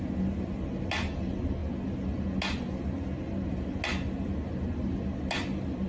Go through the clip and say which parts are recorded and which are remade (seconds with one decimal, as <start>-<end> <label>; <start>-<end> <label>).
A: 0.0-5.9 recorded